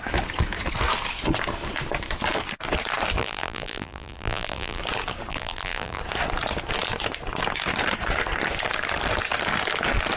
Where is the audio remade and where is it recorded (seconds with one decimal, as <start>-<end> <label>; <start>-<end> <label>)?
0.0-3.2 recorded; 3.2-4.8 remade; 4.8-5.3 recorded; 5.3-6.0 remade; 6.0-10.2 recorded